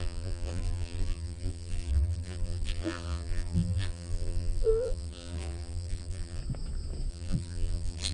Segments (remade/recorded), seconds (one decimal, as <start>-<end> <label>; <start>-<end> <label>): 0.0-6.4 remade; 6.4-7.1 recorded; 7.1-8.1 remade